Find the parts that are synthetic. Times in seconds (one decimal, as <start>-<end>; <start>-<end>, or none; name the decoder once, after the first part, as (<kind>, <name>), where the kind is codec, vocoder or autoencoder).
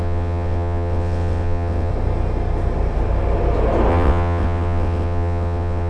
0.0-1.9 (vocoder, WaveNeXt); 3.9-5.9